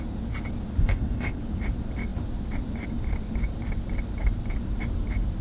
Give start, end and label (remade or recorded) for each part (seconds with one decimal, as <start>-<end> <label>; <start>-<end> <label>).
0.0-0.8 recorded; 0.8-1.4 remade; 1.4-5.4 recorded